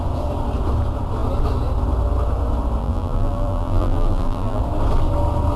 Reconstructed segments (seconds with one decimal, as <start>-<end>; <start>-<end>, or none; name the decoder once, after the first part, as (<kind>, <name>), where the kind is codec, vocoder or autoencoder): 2.8-4.6 (vocoder, BigVGAN v2)